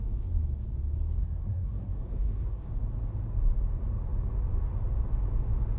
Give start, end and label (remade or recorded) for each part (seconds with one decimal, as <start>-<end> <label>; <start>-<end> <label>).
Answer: 0.0-1.2 recorded; 1.2-2.6 remade; 2.6-5.8 recorded